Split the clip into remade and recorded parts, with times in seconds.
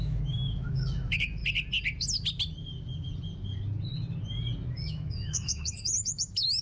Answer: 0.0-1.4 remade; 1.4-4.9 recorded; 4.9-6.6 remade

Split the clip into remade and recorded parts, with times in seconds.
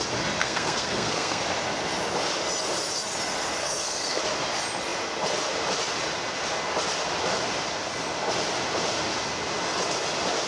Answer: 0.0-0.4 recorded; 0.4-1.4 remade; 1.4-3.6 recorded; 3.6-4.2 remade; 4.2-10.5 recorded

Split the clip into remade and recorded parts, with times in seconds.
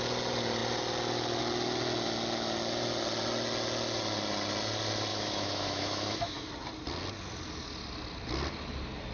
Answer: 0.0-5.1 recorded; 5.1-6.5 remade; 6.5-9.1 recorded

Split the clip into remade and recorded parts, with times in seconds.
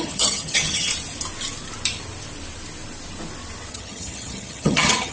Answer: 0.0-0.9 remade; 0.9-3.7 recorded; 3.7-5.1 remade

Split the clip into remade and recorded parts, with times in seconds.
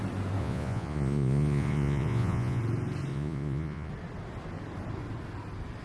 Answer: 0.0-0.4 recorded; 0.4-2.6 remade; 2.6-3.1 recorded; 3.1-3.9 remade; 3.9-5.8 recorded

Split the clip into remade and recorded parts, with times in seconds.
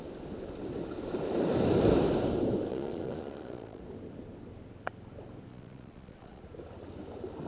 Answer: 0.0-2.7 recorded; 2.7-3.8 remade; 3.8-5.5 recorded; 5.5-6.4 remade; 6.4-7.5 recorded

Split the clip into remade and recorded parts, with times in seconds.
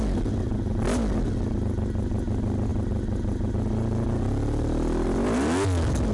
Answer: 0.0-6.1 recorded